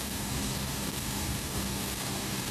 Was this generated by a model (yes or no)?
yes